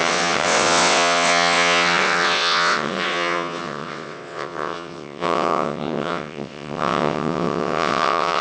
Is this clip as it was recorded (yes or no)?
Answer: no